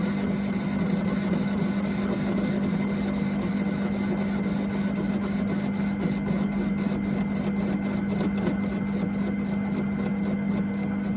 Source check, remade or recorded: recorded